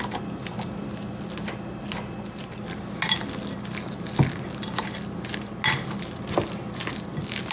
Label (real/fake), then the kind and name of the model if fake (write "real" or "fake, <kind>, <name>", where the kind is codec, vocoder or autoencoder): real